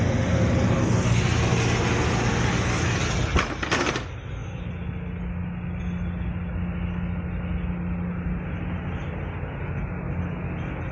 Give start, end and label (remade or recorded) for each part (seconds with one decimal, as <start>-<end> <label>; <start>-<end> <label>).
0.0-10.9 recorded